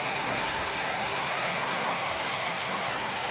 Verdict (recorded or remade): remade